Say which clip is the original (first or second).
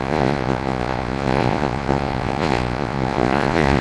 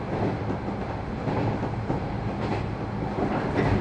second